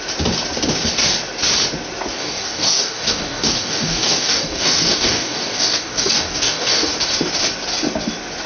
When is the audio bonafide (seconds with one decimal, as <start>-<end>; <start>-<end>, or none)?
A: 0.0-2.1; 6.9-8.5